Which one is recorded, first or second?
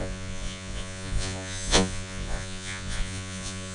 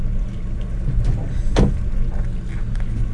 second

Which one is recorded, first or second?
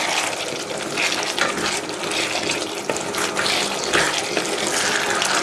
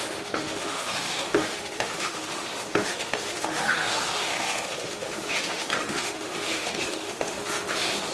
first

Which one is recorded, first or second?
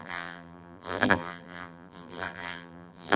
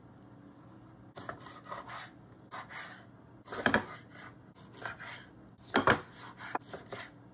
second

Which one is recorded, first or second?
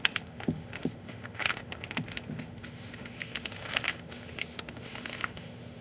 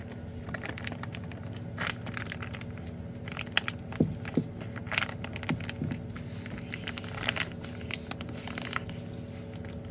second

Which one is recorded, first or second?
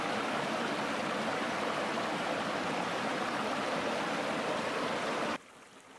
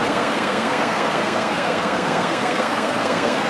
first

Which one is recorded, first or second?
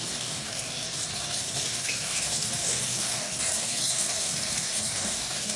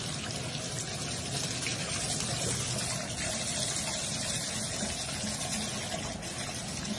second